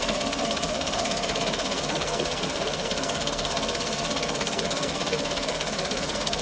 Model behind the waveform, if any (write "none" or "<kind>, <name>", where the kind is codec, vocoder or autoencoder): codec, SNAC